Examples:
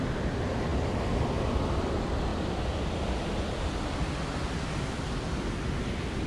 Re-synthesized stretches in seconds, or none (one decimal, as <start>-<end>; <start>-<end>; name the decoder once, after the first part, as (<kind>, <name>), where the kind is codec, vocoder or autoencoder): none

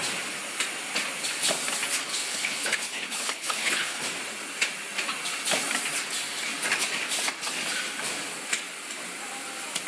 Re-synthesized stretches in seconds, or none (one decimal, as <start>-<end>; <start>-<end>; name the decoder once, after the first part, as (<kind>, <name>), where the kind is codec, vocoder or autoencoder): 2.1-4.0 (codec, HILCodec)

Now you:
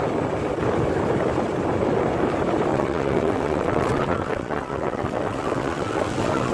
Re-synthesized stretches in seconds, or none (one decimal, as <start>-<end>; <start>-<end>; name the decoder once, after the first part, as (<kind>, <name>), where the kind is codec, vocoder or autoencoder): 2.7-6.5 (vocoder, WaveNeXt)